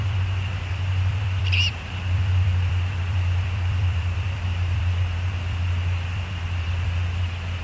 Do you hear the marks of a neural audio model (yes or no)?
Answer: yes